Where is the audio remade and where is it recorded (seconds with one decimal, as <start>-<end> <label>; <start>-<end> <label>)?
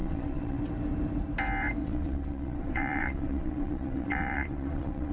0.0-0.6 remade; 0.6-1.8 recorded; 1.8-5.1 remade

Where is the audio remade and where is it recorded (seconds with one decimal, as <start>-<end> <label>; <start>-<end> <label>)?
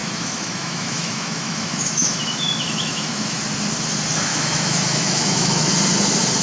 0.0-3.4 remade; 3.4-4.3 recorded; 4.3-5.7 remade; 5.7-6.4 recorded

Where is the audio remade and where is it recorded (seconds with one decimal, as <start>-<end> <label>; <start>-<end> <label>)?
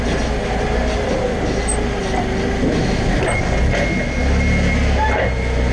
0.0-5.7 recorded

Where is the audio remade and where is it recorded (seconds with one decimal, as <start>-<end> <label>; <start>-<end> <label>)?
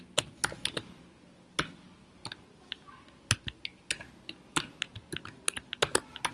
0.0-6.3 recorded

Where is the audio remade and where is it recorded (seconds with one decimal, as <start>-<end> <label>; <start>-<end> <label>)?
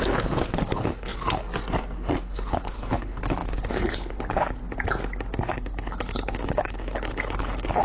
0.0-1.1 remade; 1.1-2.2 recorded; 2.2-4.6 remade; 4.6-5.5 recorded; 5.5-7.8 remade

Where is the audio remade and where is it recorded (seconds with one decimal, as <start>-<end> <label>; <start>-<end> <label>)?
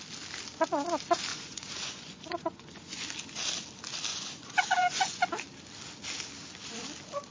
0.0-1.3 recorded; 1.3-3.0 remade; 3.0-4.1 recorded; 4.1-5.2 remade; 5.2-7.3 recorded